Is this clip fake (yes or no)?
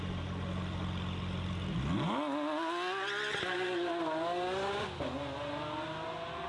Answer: no